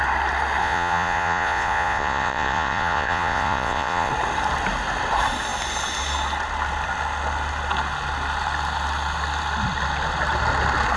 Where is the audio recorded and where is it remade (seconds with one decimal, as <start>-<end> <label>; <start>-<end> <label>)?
0.0-0.6 recorded; 0.6-4.1 remade; 4.1-11.0 recorded